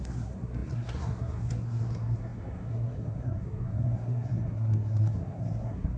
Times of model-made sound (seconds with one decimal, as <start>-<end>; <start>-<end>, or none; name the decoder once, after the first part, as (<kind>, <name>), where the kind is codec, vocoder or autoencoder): 0.0-6.0 (codec, SNAC)

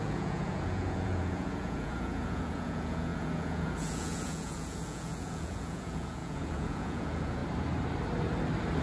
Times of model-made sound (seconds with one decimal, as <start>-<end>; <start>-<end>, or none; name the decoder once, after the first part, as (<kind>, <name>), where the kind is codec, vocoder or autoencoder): 0.0-7.4 (vocoder, Vocos)

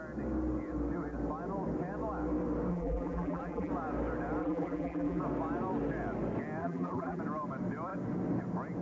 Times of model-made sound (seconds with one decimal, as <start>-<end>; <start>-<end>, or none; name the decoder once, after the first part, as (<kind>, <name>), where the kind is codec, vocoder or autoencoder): 2.7-3.7 (vocoder, BigVGAN v2); 4.4-5.2; 6.6-7.2

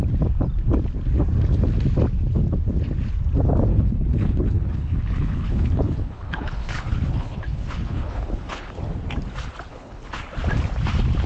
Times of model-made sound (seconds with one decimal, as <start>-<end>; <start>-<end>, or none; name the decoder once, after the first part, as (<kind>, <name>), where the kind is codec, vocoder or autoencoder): 3.7-8.7 (codec, HILCodec); 9.7-10.3

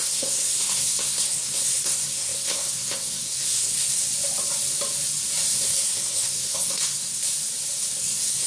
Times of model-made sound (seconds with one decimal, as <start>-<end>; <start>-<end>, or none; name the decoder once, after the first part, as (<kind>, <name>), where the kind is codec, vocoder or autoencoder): 0.0-4.0 (codec, SNAC); 5.5-7.2; 8.0-8.5

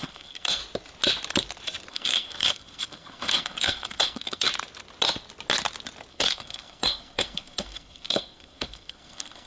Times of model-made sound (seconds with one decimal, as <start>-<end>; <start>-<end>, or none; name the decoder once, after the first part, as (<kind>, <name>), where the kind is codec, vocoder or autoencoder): 0.0-0.6 (codec, SNAC); 1.9-4.5; 6.1-9.5

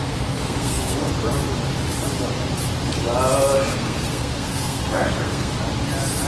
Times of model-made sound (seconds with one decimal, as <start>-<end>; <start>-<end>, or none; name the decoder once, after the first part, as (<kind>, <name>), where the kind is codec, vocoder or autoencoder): 0.0-1.1 (codec, SNAC); 3.7-5.5